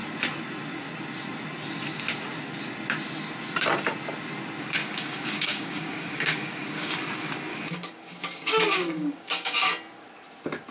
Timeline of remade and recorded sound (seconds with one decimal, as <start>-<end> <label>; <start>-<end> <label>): 0.0-4.8 recorded; 4.8-7.0 remade; 7.0-7.5 recorded; 7.5-9.7 remade; 9.7-10.7 recorded